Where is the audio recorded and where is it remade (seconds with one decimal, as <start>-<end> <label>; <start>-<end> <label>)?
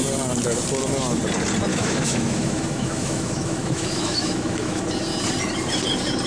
0.0-1.7 recorded; 1.7-4.8 remade; 4.8-6.3 recorded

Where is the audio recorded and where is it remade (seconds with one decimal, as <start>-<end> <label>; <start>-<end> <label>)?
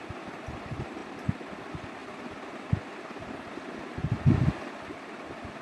0.0-5.6 recorded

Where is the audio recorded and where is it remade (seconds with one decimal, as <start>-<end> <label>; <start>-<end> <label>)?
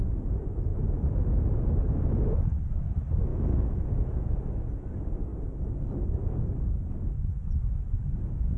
0.0-3.3 recorded; 3.3-4.3 remade; 4.3-8.6 recorded